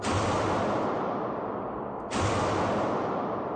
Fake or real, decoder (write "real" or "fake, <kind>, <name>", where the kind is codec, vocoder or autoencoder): real